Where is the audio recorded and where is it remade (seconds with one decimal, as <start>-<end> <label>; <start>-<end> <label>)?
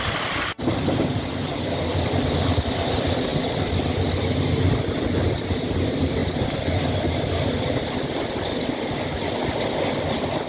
0.0-10.5 recorded